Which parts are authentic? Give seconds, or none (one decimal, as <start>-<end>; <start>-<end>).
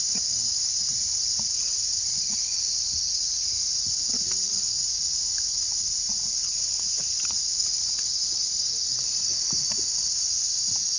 0.0-11.0